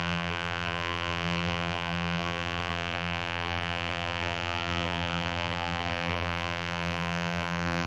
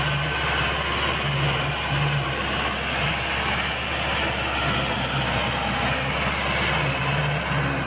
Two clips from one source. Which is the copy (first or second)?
first